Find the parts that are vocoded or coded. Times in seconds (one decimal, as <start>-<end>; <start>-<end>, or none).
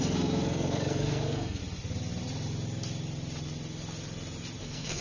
0.0-1.6; 4.6-5.0